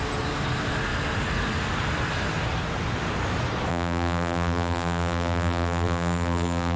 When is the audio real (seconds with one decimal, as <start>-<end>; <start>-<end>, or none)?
0.0-3.7